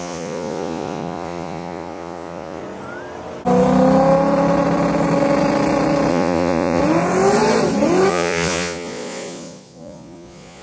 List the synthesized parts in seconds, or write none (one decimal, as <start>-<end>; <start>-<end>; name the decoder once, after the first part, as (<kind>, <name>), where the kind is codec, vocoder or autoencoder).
0.0-2.6 (vocoder, Vocos); 6.1-6.8; 8.1-10.6